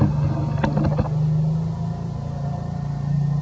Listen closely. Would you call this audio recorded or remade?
recorded